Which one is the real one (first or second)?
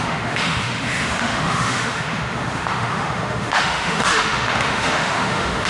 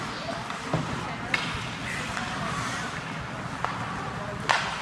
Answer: second